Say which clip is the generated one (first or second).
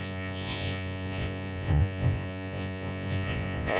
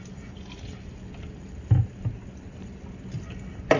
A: first